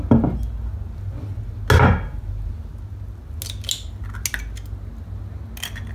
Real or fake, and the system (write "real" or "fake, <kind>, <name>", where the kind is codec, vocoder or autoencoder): real